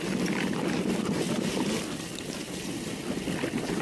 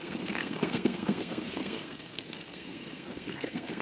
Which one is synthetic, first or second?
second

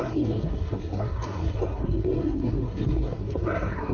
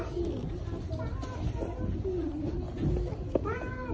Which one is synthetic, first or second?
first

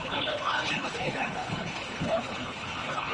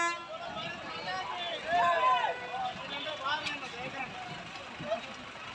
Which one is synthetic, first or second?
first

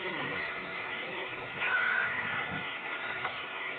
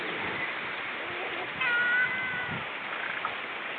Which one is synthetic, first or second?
first